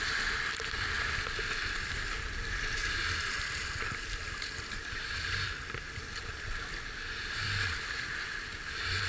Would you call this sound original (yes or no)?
yes